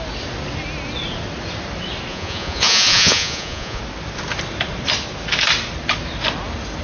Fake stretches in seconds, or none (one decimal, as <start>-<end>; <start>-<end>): 2.1-3.8